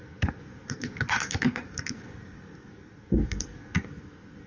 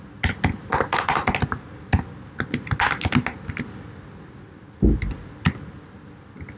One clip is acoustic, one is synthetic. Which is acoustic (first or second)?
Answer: second